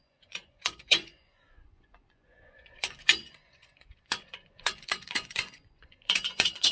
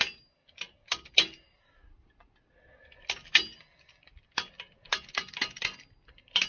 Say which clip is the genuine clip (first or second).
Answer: second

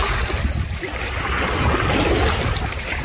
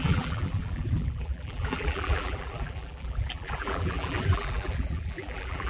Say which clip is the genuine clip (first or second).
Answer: first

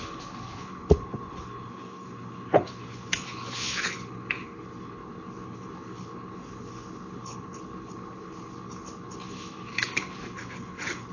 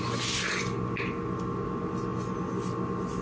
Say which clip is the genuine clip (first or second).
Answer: second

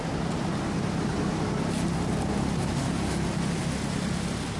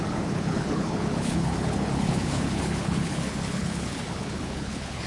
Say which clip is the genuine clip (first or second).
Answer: first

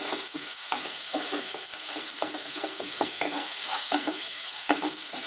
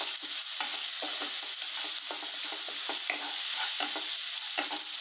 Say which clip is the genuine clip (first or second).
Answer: second